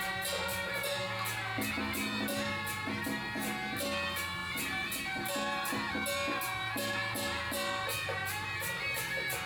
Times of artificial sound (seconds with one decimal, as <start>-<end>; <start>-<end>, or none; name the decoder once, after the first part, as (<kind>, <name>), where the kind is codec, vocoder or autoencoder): none